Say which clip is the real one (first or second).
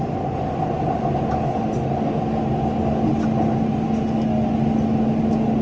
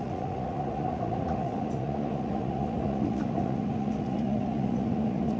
first